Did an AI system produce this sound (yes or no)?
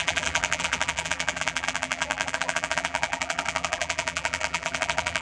yes